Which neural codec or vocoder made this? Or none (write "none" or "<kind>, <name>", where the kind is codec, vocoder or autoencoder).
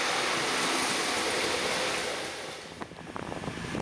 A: none